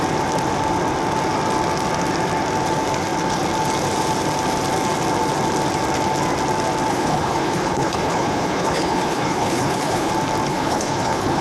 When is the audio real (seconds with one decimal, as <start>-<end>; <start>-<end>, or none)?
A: 0.0-6.9; 10.1-10.5